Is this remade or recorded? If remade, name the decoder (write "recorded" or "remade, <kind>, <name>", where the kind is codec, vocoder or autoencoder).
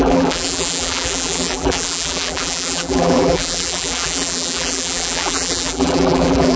remade, vocoder, BigVGAN v2